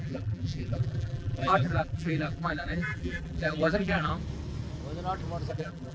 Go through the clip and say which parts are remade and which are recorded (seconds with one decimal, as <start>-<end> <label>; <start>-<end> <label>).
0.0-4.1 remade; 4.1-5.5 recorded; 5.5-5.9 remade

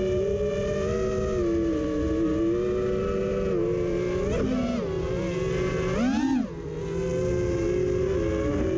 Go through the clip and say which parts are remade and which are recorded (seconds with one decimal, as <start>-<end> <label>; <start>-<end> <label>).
0.0-8.8 recorded

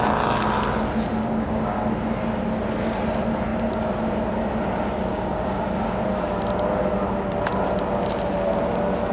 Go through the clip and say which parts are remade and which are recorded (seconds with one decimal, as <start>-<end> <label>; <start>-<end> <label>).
0.0-1.2 recorded; 1.2-1.8 remade; 1.8-5.1 recorded; 5.1-6.0 remade; 6.0-9.1 recorded

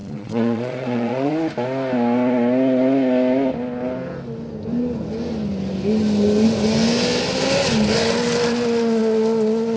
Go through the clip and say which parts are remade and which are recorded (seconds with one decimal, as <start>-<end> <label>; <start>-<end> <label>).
0.0-1.3 remade; 1.3-9.8 recorded

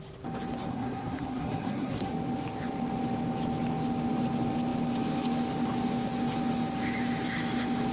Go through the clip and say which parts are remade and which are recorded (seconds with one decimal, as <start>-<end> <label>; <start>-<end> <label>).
0.0-0.7 recorded; 0.7-2.1 remade; 2.1-7.9 recorded

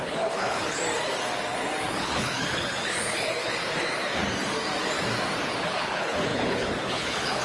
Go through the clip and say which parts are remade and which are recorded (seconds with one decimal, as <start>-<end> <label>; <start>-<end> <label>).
0.0-0.8 remade; 0.8-1.9 recorded; 1.9-3.6 remade; 3.6-5.6 recorded; 5.6-7.4 remade

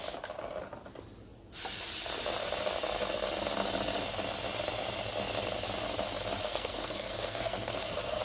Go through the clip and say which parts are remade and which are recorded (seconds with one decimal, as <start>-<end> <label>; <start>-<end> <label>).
0.0-6.4 recorded; 6.4-8.2 remade